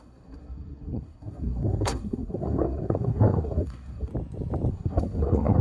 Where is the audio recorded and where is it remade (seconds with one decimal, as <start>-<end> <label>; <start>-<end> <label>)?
0.0-4.1 remade; 4.1-4.7 recorded; 4.7-5.6 remade